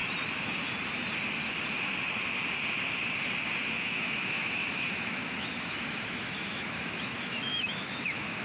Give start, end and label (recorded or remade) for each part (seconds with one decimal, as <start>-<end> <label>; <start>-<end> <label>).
0.0-3.8 recorded; 3.8-8.4 remade